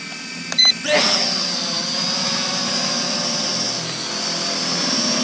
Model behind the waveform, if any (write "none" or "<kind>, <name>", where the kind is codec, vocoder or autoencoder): vocoder, BigVGAN v2